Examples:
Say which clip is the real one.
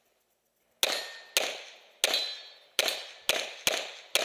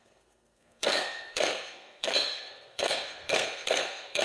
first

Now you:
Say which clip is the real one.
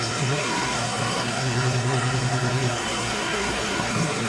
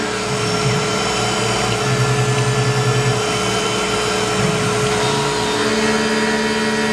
second